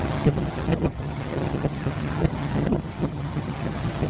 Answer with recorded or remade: remade